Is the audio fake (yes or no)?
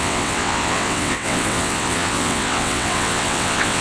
yes